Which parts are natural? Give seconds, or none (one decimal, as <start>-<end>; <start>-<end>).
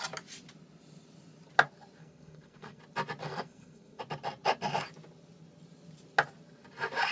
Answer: 0.0-2.0; 2.8-3.2; 4.0-7.1